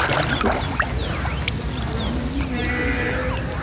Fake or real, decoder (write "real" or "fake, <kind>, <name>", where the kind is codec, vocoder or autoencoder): real